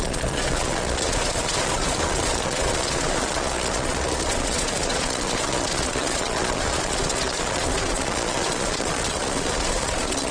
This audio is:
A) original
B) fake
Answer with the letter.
B